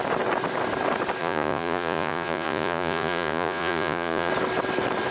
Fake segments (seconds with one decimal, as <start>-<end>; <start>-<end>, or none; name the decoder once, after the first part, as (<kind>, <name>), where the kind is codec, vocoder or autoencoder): 1.2-4.3 (vocoder, Vocos)